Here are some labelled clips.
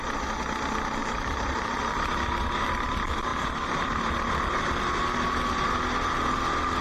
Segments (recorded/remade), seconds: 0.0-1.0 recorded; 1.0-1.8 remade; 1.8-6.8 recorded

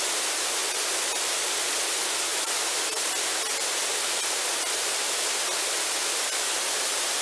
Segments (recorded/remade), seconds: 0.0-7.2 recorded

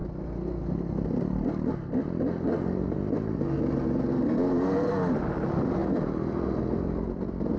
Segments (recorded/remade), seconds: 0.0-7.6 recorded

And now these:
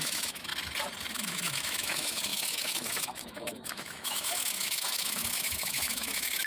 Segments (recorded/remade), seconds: 0.0-0.5 remade; 0.5-1.1 recorded; 1.1-6.5 remade

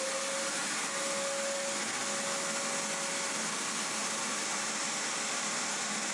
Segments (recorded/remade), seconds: 0.0-6.1 recorded

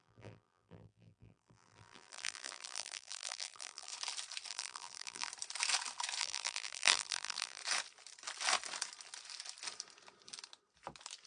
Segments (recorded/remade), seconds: 0.0-3.9 remade; 3.9-4.5 recorded; 4.5-5.3 remade; 5.3-6.2 recorded; 6.2-7.6 remade; 7.6-11.3 recorded

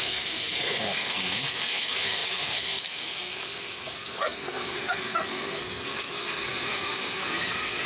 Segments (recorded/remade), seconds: 0.0-7.9 remade